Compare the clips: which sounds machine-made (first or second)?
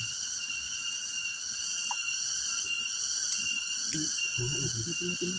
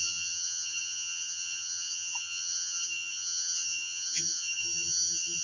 second